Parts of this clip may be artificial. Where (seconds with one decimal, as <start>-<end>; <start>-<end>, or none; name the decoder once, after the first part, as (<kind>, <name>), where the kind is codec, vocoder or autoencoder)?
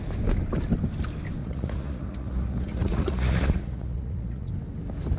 1.4-4.5 (vocoder, Vocos)